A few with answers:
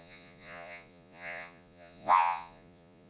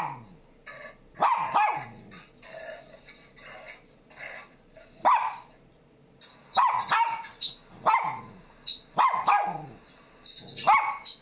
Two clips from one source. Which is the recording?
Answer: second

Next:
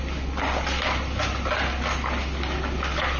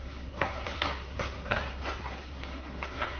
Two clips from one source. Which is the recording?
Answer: first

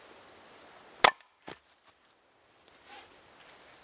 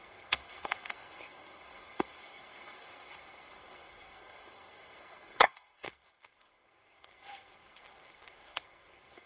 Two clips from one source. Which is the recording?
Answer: first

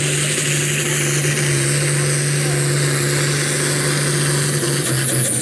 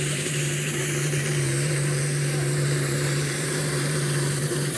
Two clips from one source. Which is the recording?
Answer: first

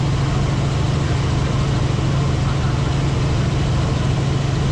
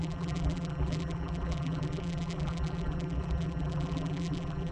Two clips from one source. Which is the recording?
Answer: first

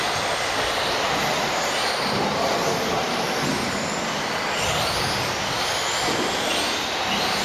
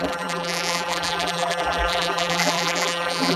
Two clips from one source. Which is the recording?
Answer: first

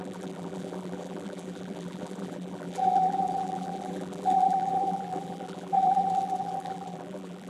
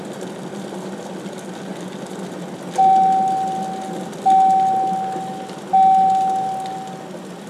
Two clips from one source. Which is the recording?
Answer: second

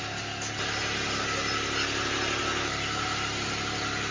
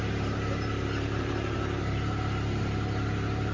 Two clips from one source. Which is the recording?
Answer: first